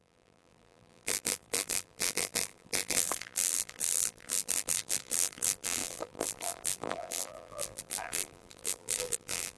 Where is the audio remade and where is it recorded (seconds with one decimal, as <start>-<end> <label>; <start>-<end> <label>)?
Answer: 0.0-9.6 remade